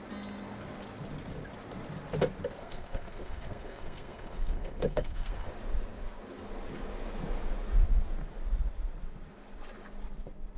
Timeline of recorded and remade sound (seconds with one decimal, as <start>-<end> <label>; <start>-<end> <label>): 0.0-2.6 recorded; 2.6-5.5 remade; 5.5-10.6 recorded